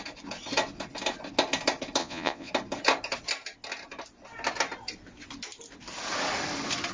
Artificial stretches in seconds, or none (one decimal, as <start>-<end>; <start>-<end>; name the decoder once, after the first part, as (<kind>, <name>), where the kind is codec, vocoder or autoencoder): 2.0-2.5 (vocoder, Vocos)